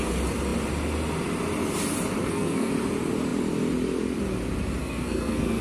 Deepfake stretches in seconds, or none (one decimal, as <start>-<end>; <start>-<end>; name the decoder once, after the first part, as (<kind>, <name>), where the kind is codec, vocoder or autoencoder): 2.2-2.7 (codec, SNAC); 4.8-5.6